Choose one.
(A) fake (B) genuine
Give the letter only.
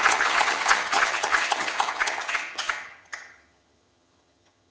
A